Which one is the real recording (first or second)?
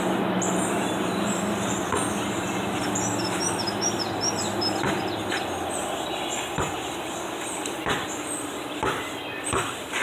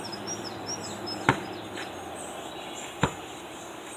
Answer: second